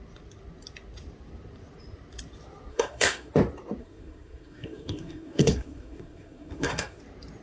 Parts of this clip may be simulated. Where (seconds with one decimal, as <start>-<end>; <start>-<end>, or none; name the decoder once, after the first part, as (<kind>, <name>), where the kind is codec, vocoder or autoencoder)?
2.7-3.3 (codec, SNAC); 3.8-7.0